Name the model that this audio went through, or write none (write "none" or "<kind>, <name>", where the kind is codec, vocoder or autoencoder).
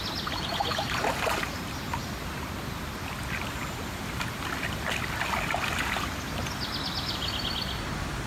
none